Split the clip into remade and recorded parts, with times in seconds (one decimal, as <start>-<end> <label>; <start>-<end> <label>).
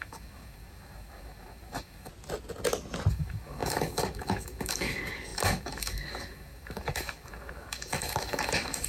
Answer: 0.0-2.1 remade; 2.1-3.1 recorded; 3.1-8.9 remade